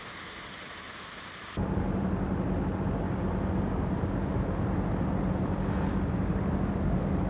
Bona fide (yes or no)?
yes